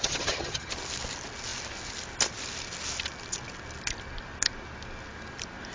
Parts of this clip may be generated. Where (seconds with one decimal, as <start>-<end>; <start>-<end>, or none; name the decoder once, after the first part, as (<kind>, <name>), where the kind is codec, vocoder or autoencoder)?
0.0-0.7 (vocoder, HiFi-GAN)